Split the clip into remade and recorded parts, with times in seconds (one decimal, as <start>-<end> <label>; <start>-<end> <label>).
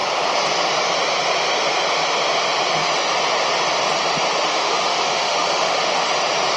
0.0-4.4 recorded; 4.4-6.1 remade; 6.1-6.6 recorded